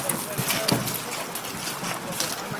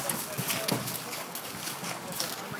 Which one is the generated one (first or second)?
second